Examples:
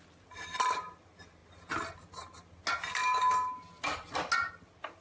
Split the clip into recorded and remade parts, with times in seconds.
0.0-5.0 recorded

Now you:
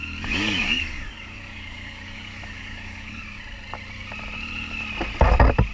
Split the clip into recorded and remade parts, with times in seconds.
0.0-3.2 remade; 3.2-5.7 recorded